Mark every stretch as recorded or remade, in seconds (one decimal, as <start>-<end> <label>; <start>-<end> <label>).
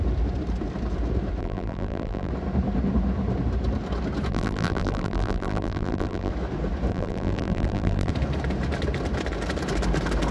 0.0-1.4 recorded; 1.4-2.3 remade; 2.3-4.3 recorded; 4.3-6.3 remade; 6.3-6.9 recorded; 6.9-8.1 remade; 8.1-10.3 recorded